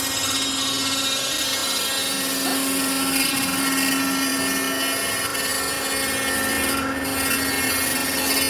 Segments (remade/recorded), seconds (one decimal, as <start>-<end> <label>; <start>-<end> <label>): 0.0-8.5 recorded